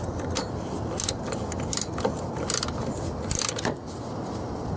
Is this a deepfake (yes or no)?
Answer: no